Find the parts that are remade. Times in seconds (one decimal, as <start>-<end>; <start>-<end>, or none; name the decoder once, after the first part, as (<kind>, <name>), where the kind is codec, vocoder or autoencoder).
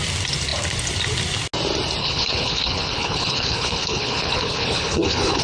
2.0-5.4 (codec, HILCodec)